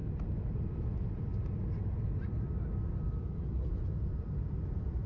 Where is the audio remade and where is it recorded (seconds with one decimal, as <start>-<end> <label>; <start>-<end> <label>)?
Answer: 0.0-0.6 recorded; 0.6-5.1 remade